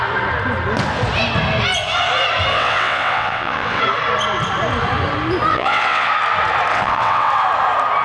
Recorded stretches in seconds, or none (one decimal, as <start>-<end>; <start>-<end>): 0.0-2.5; 3.8-5.5; 6.1-6.7; 7.3-8.0